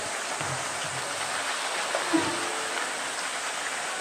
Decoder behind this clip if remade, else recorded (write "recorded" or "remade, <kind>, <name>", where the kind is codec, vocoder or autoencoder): recorded